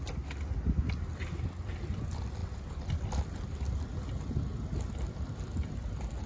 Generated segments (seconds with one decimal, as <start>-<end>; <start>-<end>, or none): none